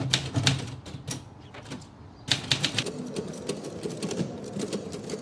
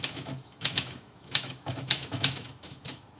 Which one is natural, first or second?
first